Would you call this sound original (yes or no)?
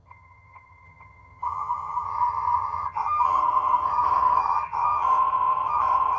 no